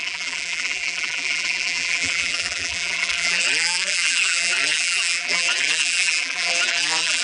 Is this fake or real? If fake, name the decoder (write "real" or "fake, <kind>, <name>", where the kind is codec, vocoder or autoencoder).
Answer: fake, vocoder, BigVGAN v2